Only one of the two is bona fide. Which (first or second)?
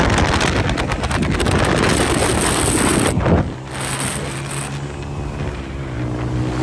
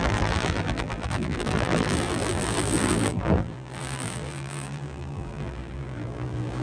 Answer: first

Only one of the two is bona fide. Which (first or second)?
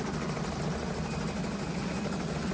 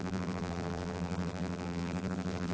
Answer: first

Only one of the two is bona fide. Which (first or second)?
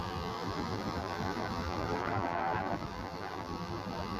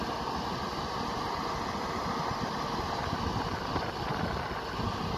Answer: second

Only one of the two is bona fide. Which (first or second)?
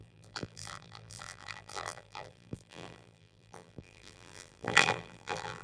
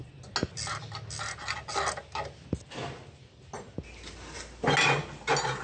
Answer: second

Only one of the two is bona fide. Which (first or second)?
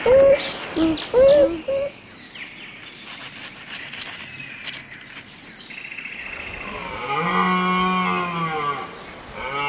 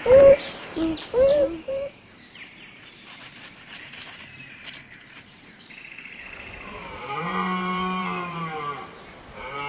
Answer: first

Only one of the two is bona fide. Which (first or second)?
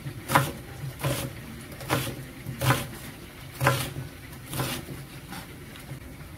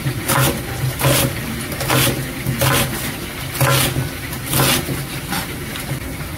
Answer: second